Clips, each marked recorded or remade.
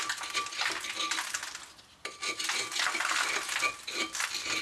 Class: recorded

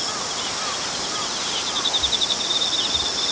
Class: recorded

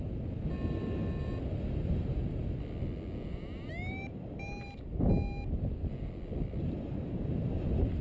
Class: recorded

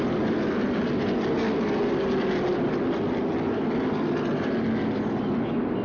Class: recorded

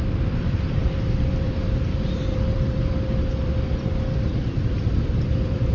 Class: remade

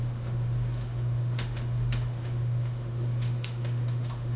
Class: remade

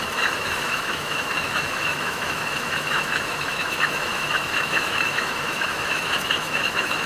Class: remade